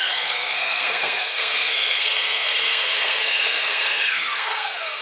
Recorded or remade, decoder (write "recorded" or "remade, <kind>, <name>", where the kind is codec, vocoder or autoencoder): remade, codec, SNAC